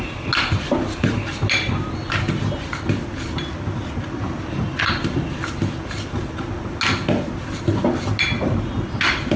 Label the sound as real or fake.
real